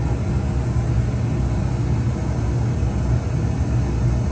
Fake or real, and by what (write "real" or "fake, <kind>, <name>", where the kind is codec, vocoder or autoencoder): real